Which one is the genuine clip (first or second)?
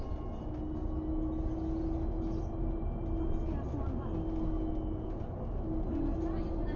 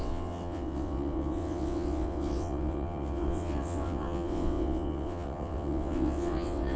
first